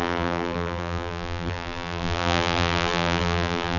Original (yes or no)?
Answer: no